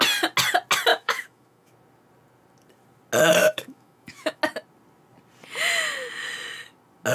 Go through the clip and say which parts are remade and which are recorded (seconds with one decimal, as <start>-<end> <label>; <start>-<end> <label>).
0.0-0.9 recorded; 0.9-1.7 remade; 1.7-3.4 recorded; 3.4-4.4 remade; 4.4-7.1 recorded